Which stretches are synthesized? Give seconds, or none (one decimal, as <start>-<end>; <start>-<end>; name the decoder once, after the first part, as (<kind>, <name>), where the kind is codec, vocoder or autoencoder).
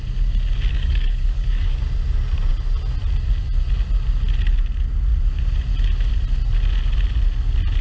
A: 0.7-1.8 (codec, DAC)